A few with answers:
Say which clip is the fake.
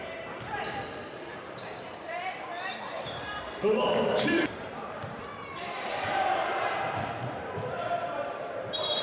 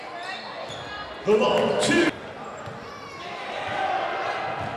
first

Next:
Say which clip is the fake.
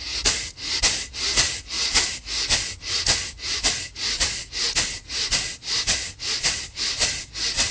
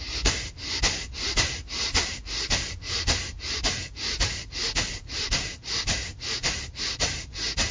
second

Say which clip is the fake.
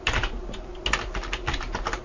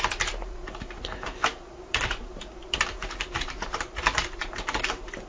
second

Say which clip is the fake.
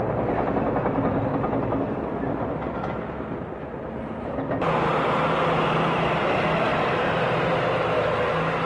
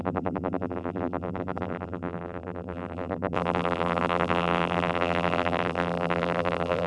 second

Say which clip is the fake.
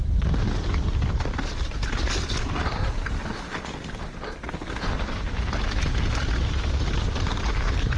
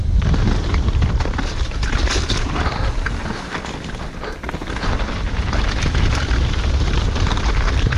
second